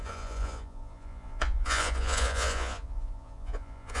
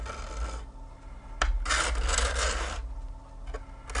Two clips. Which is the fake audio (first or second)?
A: first